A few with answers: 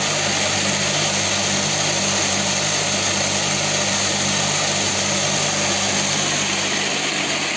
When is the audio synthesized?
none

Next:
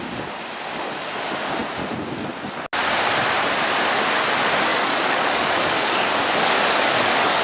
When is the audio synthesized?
4.7-7.4 (codec, DAC)

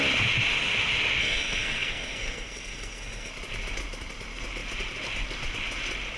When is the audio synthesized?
1.2-3.3 (codec, SNAC)

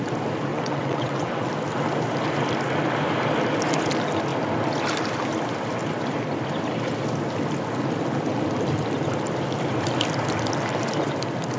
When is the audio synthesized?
0.5-1.5 (vocoder, WaveNeXt)